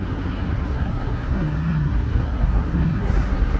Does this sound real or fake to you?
fake